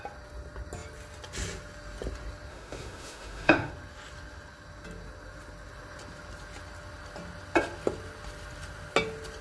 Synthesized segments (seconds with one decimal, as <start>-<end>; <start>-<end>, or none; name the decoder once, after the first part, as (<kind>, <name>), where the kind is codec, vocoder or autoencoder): 2.5-3.7 (autoencoder, DAC-VAE)